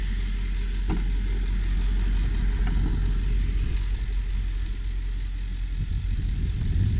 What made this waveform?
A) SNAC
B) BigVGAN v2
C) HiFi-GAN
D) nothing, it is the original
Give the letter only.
D